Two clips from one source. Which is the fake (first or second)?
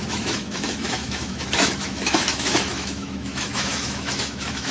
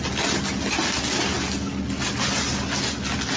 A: first